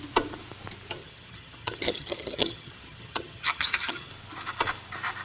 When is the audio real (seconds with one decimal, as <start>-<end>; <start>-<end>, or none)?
0.0-1.0; 4.1-5.2